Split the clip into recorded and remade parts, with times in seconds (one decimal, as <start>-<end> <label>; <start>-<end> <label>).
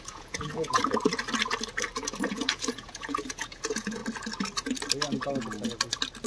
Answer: 0.0-0.8 remade; 0.8-2.3 recorded; 2.3-4.0 remade; 4.0-6.3 recorded